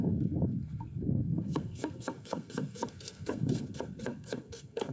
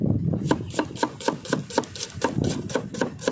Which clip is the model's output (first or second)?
first